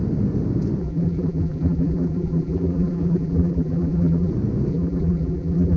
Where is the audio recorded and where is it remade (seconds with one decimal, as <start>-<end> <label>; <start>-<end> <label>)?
0.0-0.8 recorded; 0.8-4.3 remade; 4.3-4.7 recorded; 4.7-5.8 remade

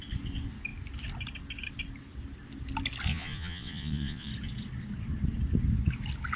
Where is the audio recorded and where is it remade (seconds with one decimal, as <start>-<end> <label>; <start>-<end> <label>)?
0.0-3.1 recorded; 3.1-4.3 remade; 4.3-6.4 recorded

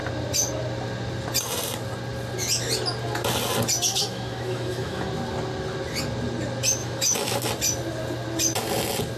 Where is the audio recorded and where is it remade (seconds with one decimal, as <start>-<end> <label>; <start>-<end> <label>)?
0.0-3.9 recorded; 3.9-5.1 remade; 5.1-6.8 recorded; 6.8-7.5 remade; 7.5-9.2 recorded

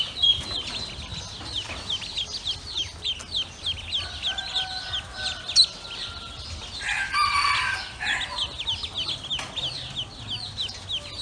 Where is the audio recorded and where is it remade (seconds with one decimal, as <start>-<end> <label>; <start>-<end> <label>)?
0.0-11.2 recorded

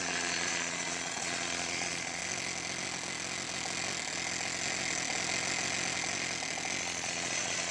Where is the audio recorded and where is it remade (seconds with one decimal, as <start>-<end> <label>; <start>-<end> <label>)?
0.0-2.2 remade; 2.2-6.8 recorded; 6.8-7.7 remade

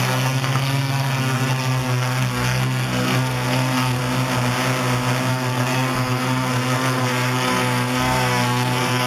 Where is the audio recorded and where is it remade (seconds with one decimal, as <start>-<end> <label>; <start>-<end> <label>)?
0.0-4.0 remade; 4.0-5.3 recorded; 5.3-9.1 remade

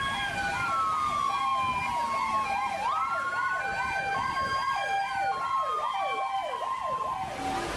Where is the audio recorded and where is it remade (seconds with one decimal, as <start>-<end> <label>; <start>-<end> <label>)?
0.0-7.8 recorded